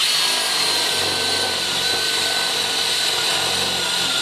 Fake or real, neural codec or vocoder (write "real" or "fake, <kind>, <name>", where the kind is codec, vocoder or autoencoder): real